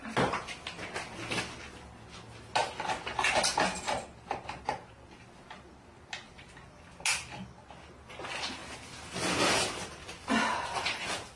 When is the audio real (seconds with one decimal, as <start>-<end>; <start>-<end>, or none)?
0.0-11.4